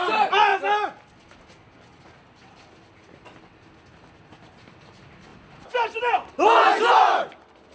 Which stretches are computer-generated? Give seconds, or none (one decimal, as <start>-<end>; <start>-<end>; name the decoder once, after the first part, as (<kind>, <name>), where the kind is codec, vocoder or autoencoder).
none